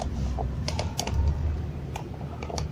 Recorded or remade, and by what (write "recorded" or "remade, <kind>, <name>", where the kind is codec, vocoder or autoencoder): recorded